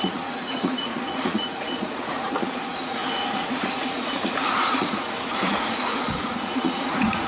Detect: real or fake fake